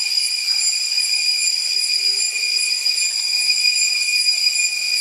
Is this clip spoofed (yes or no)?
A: no